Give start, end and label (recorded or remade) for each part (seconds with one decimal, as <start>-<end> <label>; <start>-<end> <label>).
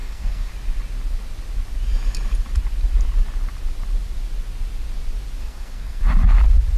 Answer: 0.0-0.5 remade; 0.5-5.4 recorded; 5.4-6.0 remade; 6.0-6.8 recorded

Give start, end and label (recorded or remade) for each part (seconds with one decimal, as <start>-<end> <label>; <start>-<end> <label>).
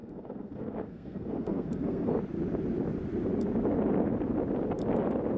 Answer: 0.0-2.1 remade; 2.1-5.4 recorded